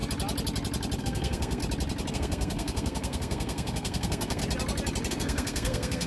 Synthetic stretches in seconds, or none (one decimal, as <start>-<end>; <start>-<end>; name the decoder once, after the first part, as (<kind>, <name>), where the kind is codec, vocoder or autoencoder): 1.0-1.6 (codec, SNAC); 2.1-4.4; 5.1-6.1